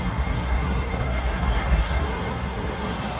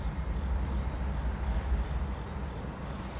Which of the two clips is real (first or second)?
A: second